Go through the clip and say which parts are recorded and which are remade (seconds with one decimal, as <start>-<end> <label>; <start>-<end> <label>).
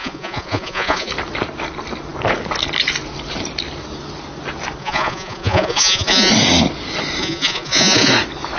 0.0-1.1 remade; 1.1-4.8 recorded; 4.8-6.3 remade; 6.3-7.2 recorded; 7.2-8.1 remade; 8.1-8.6 recorded